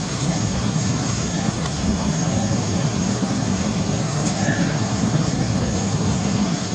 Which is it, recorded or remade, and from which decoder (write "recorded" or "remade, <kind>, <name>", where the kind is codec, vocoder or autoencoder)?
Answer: remade, codec, SNAC